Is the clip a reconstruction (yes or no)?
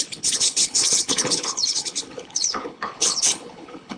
yes